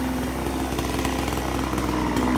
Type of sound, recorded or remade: recorded